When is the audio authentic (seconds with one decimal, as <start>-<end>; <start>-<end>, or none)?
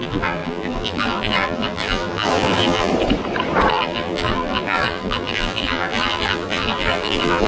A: 2.9-3.7